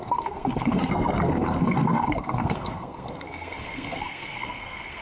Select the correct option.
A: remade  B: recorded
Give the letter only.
A